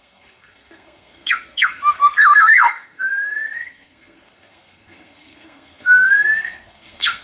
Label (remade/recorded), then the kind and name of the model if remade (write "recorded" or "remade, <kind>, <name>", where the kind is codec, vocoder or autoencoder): remade, codec, SNAC